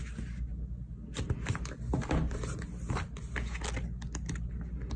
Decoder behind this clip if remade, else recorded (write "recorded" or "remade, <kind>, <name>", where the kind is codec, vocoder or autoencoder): recorded